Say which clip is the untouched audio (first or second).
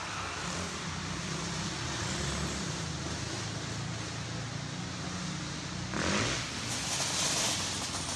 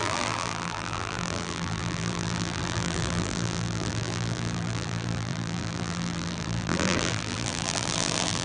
first